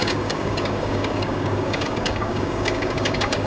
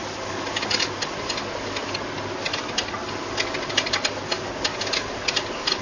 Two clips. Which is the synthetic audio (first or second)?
first